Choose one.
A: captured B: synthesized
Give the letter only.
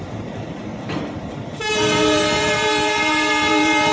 B